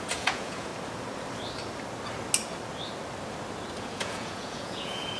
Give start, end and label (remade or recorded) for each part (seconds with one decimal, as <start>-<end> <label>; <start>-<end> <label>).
0.0-0.7 remade; 0.7-3.8 recorded; 3.8-5.2 remade